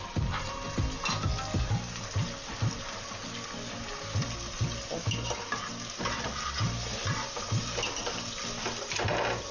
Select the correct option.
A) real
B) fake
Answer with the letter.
A